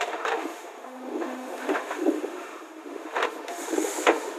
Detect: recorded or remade remade